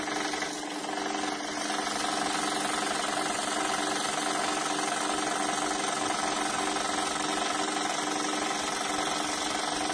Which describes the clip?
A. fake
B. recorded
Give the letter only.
B